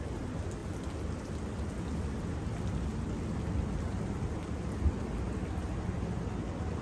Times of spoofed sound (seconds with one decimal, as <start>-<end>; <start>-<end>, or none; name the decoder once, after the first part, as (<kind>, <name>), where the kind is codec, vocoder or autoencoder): none